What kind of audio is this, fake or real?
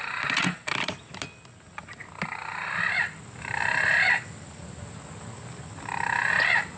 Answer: real